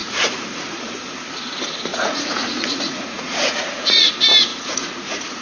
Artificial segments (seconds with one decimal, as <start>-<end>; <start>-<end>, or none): 0.0-0.9; 1.9-4.1; 4.5-5.4